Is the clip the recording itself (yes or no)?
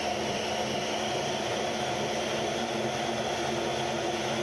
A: yes